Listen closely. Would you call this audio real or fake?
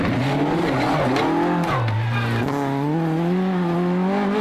real